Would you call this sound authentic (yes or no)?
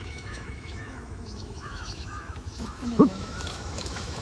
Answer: no